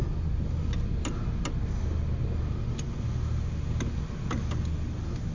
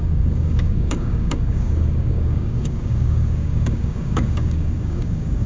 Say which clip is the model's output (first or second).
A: second